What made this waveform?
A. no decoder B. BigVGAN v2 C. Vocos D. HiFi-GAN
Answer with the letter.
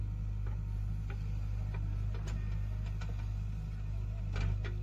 A